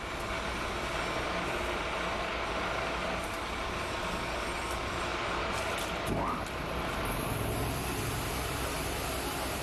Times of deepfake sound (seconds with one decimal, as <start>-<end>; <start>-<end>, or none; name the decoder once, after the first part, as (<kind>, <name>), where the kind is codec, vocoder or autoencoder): none